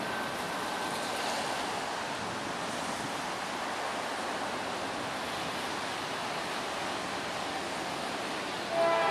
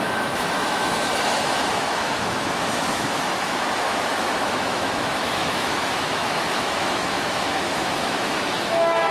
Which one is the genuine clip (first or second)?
first